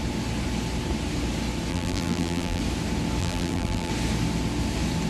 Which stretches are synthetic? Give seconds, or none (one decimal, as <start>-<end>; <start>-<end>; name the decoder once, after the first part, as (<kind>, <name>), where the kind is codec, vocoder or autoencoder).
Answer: 1.7-2.6 (vocoder, BigVGAN v2); 3.2-3.9